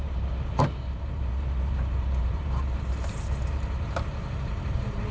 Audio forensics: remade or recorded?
remade